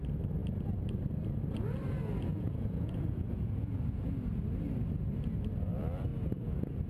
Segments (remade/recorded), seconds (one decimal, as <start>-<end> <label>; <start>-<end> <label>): 0.0-2.3 recorded; 2.3-4.1 remade; 4.1-6.1 recorded; 6.1-6.9 remade

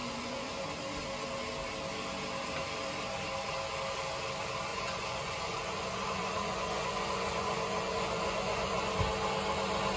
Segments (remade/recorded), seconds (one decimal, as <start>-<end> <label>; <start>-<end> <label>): 0.0-0.6 remade; 0.6-4.7 recorded; 4.7-8.9 remade; 8.9-10.0 recorded

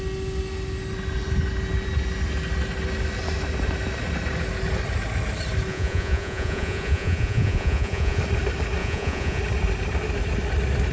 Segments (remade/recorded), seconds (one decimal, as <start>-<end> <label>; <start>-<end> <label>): 0.0-5.7 recorded; 5.7-8.2 remade; 8.2-8.8 recorded; 8.8-9.4 remade; 9.4-10.9 recorded

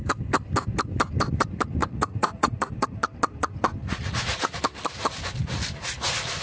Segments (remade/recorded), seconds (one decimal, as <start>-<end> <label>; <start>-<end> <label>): 0.0-1.8 recorded; 1.8-2.6 remade; 2.6-3.8 recorded; 3.8-4.6 remade; 4.6-6.4 recorded

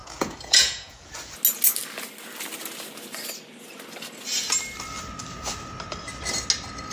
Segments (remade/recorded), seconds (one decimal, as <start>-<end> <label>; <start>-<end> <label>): 0.0-1.1 remade; 1.1-6.9 recorded

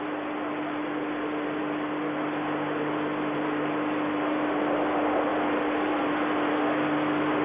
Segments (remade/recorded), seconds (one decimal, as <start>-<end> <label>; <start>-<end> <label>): 0.0-7.4 recorded

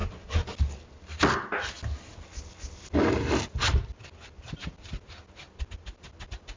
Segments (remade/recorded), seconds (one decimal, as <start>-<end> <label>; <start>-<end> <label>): 0.0-6.6 recorded